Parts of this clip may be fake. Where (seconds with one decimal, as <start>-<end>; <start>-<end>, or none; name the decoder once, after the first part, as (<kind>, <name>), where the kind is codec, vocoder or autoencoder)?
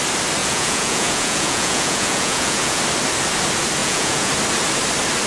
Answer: 0.4-2.8 (vocoder, Vocos); 3.8-4.3